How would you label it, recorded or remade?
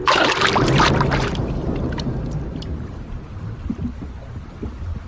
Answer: recorded